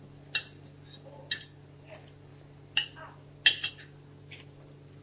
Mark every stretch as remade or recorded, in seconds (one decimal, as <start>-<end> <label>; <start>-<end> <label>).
0.0-5.0 recorded